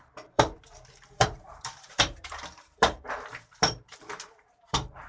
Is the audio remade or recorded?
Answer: remade